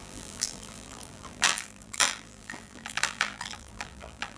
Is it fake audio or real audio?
fake